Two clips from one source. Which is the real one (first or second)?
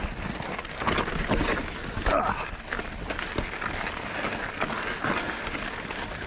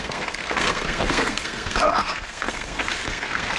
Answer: first